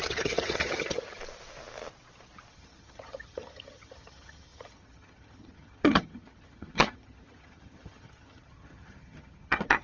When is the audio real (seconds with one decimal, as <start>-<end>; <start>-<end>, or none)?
1.2-2.5